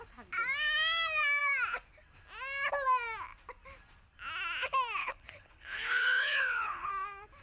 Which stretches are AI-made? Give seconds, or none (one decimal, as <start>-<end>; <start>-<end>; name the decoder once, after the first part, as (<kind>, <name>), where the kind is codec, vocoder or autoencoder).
5.0-6.9 (codec, HILCodec)